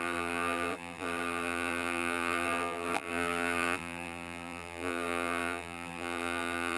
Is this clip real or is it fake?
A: fake